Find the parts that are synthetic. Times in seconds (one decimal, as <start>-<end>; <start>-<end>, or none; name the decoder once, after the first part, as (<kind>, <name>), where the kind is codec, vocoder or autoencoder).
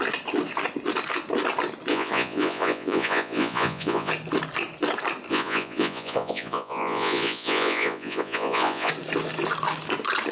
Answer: 1.9-4.1 (vocoder, Vocos); 5.3-8.9